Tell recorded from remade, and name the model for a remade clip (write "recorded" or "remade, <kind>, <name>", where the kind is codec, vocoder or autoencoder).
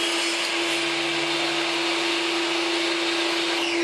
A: recorded